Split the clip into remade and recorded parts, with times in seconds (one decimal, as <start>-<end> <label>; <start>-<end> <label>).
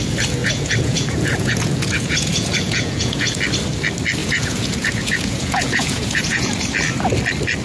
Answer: 0.0-0.4 recorded; 0.4-3.4 remade; 3.4-4.2 recorded; 4.2-6.5 remade; 6.5-7.6 recorded